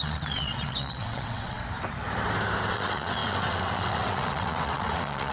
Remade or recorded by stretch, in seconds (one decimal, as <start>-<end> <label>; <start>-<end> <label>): 0.0-1.6 remade; 1.6-2.7 recorded; 2.7-5.3 remade